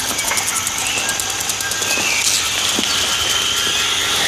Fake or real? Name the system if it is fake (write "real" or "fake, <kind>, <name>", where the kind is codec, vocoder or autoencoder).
real